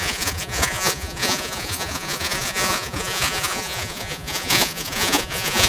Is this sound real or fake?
fake